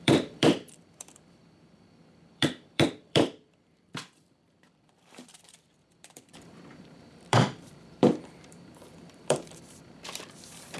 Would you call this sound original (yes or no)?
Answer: no